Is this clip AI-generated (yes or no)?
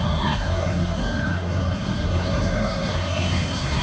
yes